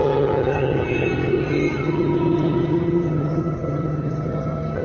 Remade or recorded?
remade